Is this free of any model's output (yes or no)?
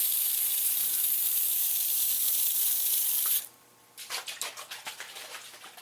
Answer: no